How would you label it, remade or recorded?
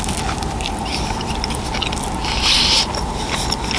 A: recorded